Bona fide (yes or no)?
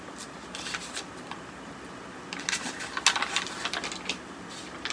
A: yes